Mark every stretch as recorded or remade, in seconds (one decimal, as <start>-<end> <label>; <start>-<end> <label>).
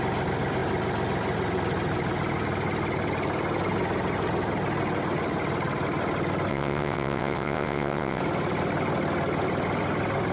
0.0-6.5 recorded; 6.5-8.2 remade; 8.2-10.3 recorded